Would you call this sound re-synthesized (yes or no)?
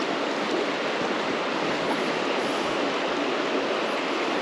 no